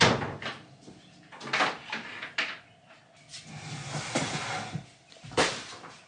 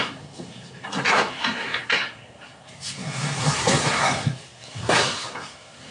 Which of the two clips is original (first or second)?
first